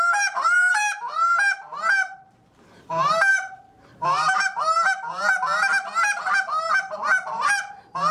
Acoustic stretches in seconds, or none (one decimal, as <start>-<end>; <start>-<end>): none